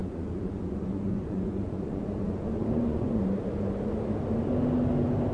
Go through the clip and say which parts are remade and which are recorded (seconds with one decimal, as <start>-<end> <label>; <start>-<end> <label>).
0.0-3.2 remade; 3.2-5.3 recorded